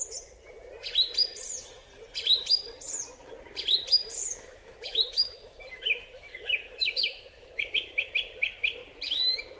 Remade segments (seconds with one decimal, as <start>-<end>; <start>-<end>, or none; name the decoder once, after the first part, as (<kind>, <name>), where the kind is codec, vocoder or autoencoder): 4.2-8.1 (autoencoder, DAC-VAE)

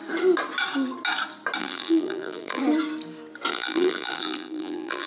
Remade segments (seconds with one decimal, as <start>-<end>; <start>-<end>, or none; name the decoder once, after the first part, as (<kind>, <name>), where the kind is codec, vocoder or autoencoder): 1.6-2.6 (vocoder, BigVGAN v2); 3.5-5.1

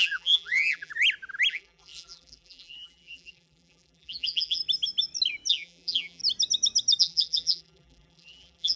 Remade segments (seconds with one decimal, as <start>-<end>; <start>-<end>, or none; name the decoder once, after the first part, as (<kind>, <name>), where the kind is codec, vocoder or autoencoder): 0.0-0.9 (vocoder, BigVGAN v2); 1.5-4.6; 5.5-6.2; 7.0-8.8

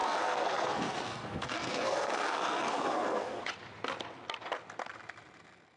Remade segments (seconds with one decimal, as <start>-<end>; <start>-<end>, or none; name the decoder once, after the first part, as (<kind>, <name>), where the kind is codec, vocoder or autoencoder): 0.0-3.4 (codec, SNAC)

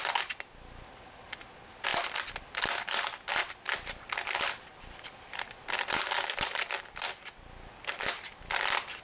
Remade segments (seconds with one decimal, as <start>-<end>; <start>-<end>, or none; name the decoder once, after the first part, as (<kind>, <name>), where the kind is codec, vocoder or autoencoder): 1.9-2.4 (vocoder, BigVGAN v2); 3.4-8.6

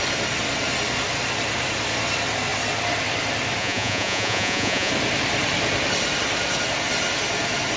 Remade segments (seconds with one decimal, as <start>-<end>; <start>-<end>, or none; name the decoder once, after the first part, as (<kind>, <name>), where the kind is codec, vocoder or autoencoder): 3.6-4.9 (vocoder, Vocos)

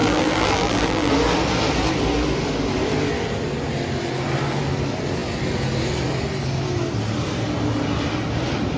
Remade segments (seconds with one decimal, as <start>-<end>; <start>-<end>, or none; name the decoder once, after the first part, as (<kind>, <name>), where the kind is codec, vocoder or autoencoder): 0.0-1.1 (vocoder, BigVGAN v2)

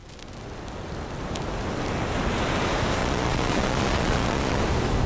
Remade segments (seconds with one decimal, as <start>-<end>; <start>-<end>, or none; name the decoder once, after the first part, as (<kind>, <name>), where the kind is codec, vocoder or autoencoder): 3.0-4.6 (vocoder, Vocos)